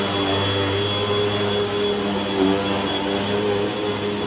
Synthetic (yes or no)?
no